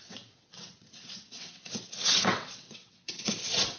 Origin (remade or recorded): remade